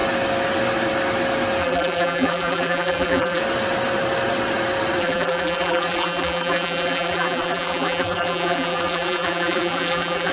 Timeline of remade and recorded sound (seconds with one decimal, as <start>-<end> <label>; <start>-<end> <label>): 0.0-1.6 recorded; 1.6-3.4 remade; 3.4-5.0 recorded; 5.0-10.3 remade